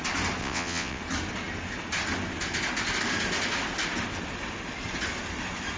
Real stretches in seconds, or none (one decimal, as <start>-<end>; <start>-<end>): 0.0-0.4; 1.0-5.8